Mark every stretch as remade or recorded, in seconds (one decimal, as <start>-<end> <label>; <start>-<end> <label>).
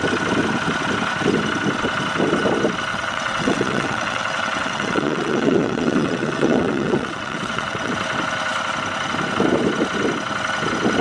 0.0-2.9 recorded; 2.9-7.9 remade; 7.9-11.0 recorded